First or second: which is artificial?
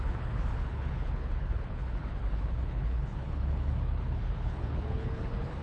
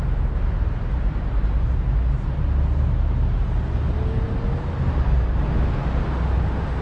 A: first